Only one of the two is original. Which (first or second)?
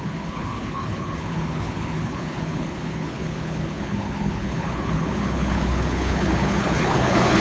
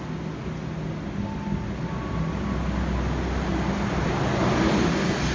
second